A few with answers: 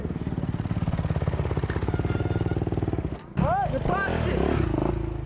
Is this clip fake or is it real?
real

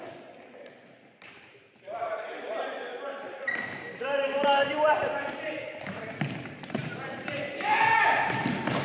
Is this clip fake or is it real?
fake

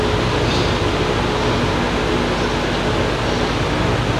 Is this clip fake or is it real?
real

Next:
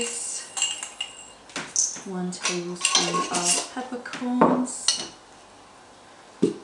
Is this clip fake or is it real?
real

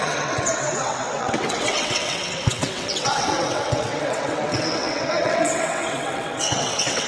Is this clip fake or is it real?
fake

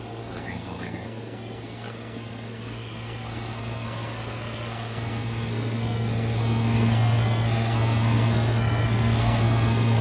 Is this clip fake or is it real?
fake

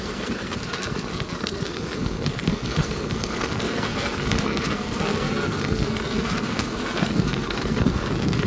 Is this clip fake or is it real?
fake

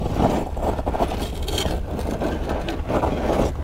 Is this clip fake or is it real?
real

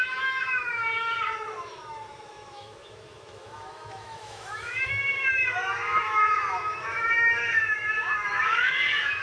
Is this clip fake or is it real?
fake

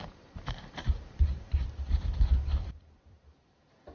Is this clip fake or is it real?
fake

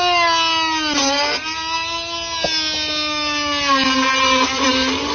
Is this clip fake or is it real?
real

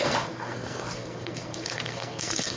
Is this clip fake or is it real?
fake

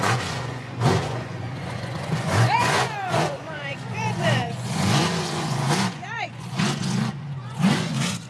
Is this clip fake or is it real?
fake